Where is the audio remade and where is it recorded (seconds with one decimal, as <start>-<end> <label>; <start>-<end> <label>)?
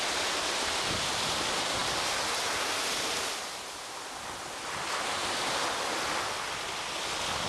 0.0-7.5 recorded